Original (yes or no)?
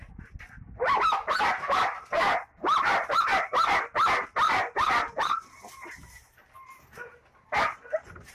yes